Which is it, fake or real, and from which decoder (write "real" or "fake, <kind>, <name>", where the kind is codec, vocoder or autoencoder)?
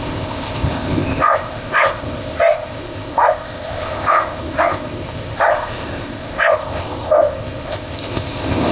fake, codec, ZipCodec